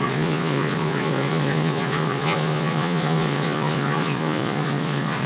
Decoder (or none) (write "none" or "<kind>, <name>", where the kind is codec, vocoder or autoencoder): vocoder, Vocos